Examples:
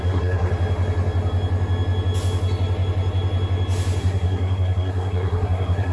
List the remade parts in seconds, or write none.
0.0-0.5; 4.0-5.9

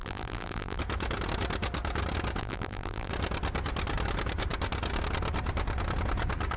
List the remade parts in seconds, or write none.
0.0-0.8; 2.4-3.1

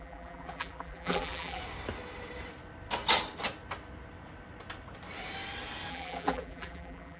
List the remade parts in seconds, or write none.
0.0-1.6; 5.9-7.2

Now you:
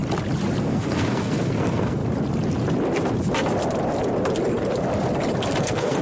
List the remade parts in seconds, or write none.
0.6-2.0; 5.6-6.0

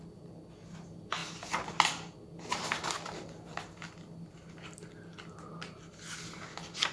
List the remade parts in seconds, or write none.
none

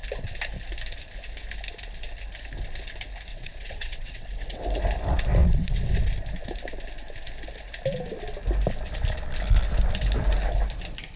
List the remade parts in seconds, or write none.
3.3-4.6; 5.4-6.1

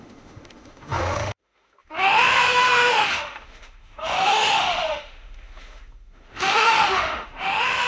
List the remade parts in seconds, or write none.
0.0-7.9